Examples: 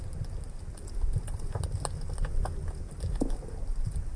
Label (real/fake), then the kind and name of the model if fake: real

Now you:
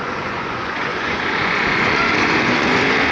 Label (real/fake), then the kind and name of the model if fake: fake, vocoder, Vocos